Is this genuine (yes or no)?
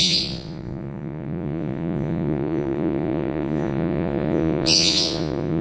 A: no